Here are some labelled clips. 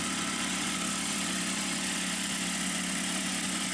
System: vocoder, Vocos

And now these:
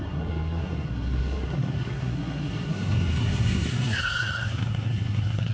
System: codec, SNAC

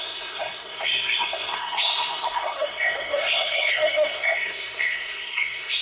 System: codec, SNAC